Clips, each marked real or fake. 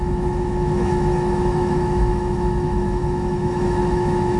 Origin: fake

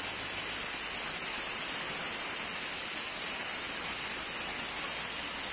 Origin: real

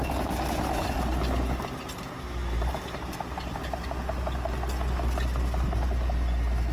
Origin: real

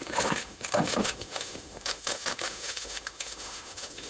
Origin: fake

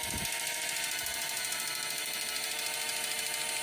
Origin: real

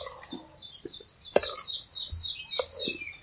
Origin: real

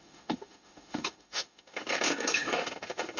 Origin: fake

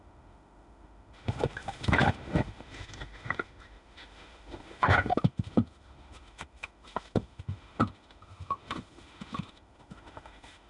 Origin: fake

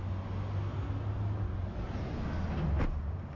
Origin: real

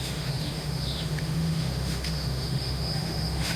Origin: fake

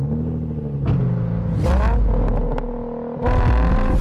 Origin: real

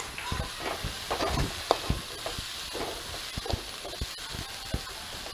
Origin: real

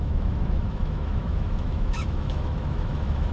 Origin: fake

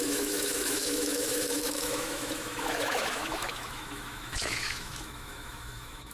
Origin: fake